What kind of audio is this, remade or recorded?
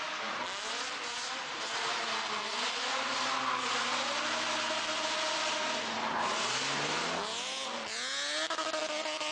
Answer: recorded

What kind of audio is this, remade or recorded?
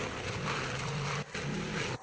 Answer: recorded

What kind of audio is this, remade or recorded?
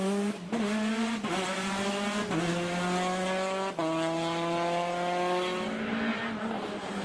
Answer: recorded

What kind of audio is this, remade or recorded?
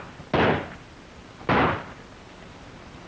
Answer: recorded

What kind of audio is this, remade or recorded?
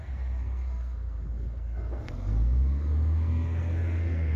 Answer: remade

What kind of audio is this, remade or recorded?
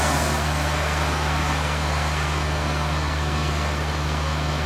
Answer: remade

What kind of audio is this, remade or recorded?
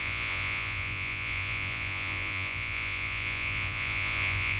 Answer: remade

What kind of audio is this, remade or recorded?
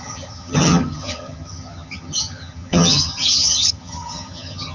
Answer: remade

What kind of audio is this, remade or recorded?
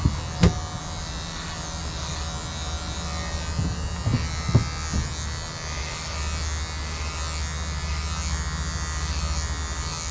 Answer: recorded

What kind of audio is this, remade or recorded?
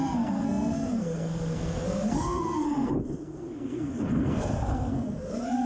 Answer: remade